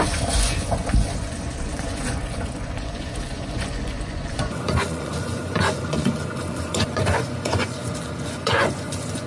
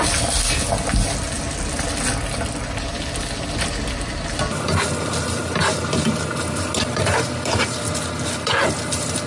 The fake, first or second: first